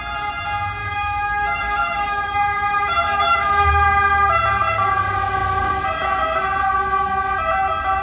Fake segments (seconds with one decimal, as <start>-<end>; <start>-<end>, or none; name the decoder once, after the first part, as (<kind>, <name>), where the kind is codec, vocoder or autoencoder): 0.8-3.7 (autoencoder, DAC-VAE)